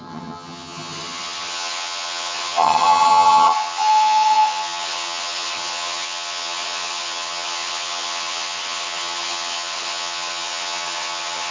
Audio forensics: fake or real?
fake